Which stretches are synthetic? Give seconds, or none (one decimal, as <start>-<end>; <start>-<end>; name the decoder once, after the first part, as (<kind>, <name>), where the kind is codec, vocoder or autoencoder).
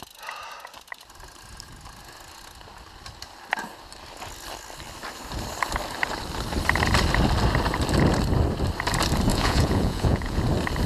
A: 9.3-10.4 (vocoder, Vocos)